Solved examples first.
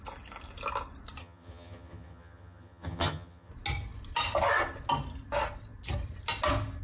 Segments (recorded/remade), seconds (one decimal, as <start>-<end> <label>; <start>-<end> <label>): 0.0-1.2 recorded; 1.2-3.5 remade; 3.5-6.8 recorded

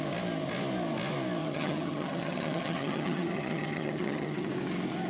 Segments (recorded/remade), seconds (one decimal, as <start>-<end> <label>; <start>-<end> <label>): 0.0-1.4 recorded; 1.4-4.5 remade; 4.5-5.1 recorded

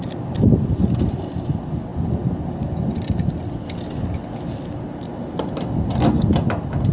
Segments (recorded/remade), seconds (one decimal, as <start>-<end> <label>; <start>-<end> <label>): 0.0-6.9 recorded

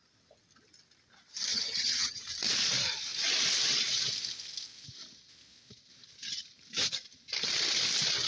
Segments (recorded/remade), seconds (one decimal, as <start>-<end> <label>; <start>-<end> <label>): 0.0-1.5 recorded; 1.5-2.2 remade; 2.2-8.3 recorded

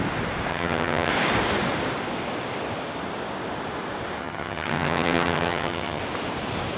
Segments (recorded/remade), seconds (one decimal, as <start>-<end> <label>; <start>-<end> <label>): 0.0-0.5 recorded; 0.5-1.1 remade; 1.1-4.2 recorded; 4.2-6.0 remade; 6.0-6.8 recorded

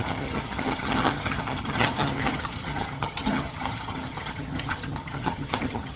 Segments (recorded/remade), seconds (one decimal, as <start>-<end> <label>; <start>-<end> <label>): 0.0-6.0 remade

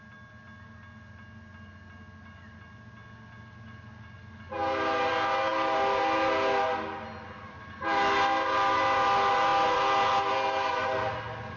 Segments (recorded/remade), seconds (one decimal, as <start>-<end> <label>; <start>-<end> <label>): 0.0-11.6 recorded